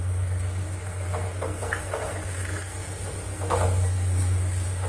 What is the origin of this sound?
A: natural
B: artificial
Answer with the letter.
B